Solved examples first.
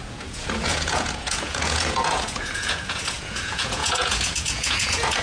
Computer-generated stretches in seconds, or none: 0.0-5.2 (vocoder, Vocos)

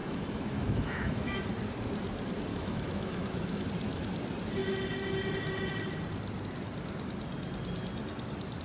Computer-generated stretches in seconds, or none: 0.0-1.4 (autoencoder, DAC-VAE); 2.5-3.7

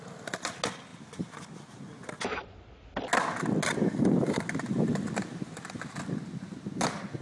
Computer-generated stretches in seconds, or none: none

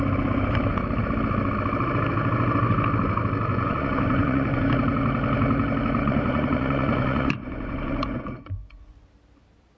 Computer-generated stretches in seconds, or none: 3.5-4.6 (vocoder, Vocos); 6.0-9.1

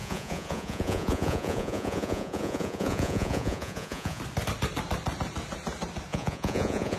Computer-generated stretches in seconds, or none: 0.0-4.2 (vocoder, Vocos); 6.1-7.0

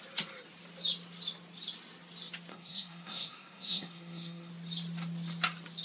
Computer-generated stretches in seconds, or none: 2.5-4.5 (codec, SNAC)